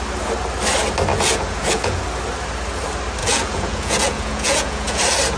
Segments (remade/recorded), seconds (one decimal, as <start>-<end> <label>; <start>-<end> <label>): 0.0-1.1 recorded; 1.1-2.0 remade; 2.0-3.2 recorded; 3.2-5.0 remade; 5.0-5.4 recorded